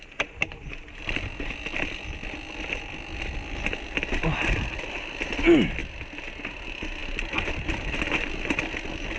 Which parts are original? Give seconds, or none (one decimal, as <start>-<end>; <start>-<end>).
0.0-9.2